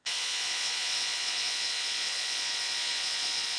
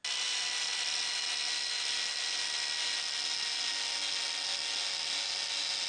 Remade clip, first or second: first